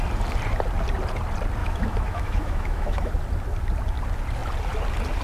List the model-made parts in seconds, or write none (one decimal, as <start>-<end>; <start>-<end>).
1.6-3.1